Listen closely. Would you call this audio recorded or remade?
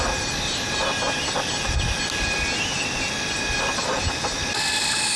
recorded